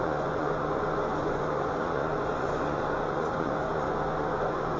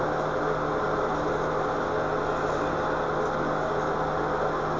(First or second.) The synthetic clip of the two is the first